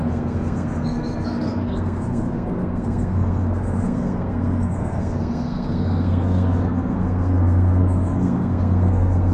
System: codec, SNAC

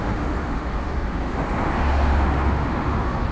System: autoencoder, DAC-VAE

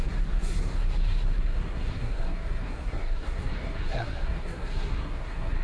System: codec, SNAC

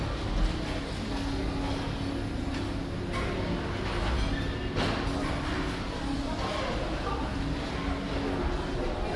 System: none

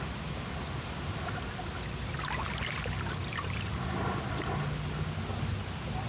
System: none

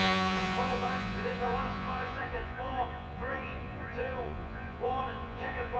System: vocoder, Vocos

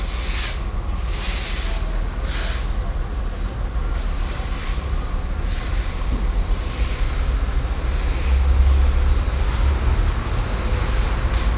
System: none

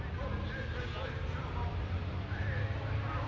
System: none